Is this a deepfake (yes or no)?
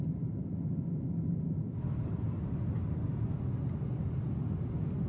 no